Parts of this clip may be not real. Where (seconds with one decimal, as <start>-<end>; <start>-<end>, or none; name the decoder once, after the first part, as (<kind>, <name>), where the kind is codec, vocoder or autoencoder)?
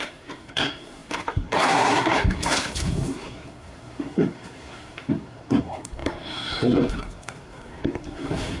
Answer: 0.0-8.6 (codec, SNAC)